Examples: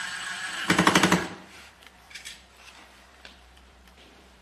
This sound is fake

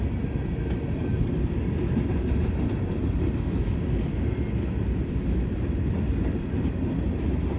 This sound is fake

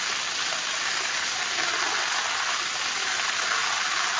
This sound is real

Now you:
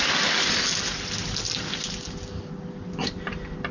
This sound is real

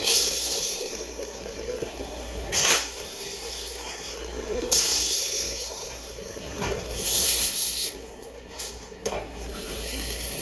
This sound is fake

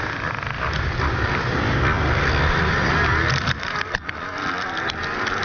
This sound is real